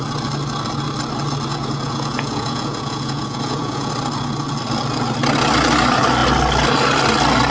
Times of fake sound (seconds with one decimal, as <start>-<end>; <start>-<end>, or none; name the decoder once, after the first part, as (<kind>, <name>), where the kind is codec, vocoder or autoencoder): 1.5-3.9 (vocoder, Vocos)